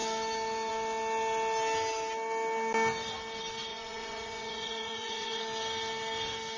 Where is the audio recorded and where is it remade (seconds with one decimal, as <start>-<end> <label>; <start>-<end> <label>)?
0.0-3.7 recorded; 3.7-5.4 remade; 5.4-6.6 recorded